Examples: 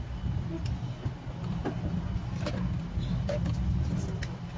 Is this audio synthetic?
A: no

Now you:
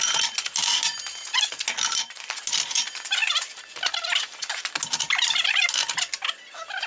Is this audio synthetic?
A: no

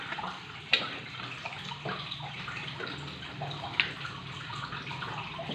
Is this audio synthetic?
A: no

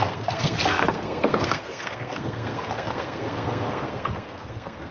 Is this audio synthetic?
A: yes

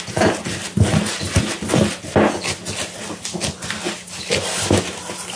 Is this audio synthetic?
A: no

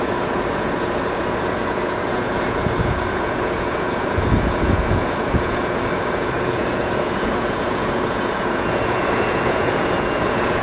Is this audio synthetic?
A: yes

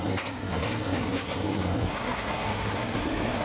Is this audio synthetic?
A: yes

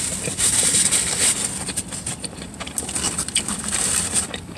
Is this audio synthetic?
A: yes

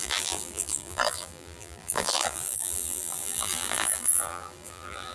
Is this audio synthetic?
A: yes